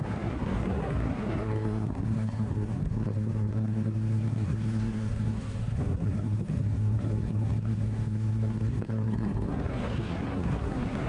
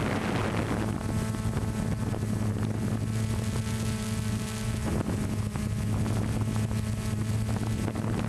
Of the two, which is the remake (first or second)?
first